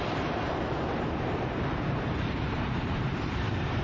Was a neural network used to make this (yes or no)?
yes